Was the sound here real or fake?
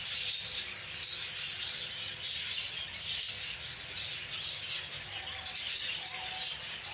real